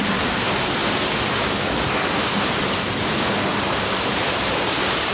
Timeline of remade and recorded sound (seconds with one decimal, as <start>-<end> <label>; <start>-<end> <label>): 0.0-0.8 remade; 0.8-2.1 recorded; 2.1-5.1 remade